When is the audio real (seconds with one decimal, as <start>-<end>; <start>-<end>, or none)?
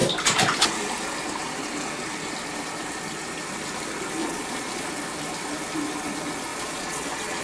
0.0-4.2; 4.9-6.5